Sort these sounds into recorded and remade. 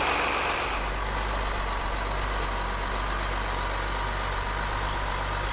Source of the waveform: recorded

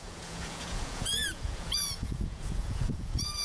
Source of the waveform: remade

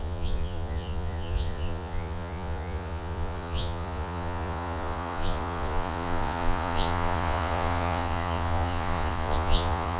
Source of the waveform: remade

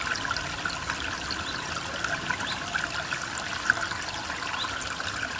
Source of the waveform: recorded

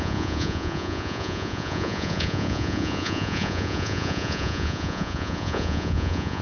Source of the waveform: remade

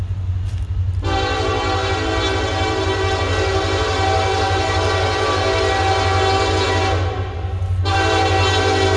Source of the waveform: recorded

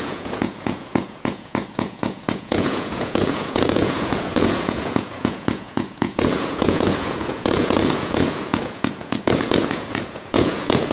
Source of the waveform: remade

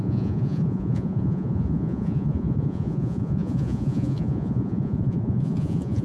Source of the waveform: remade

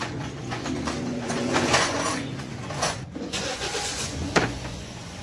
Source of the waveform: remade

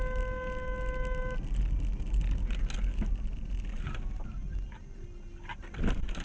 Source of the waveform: recorded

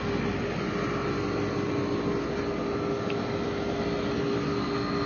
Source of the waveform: recorded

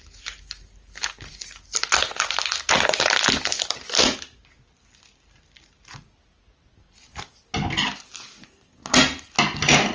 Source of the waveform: recorded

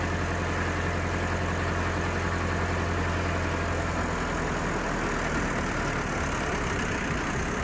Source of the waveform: recorded